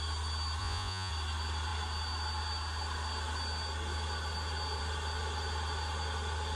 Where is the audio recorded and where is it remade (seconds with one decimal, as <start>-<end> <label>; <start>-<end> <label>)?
0.0-0.6 recorded; 0.6-1.1 remade; 1.1-6.5 recorded